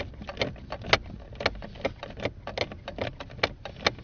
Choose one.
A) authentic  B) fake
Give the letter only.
A